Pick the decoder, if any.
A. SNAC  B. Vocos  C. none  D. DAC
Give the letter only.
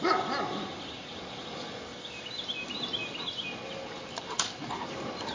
C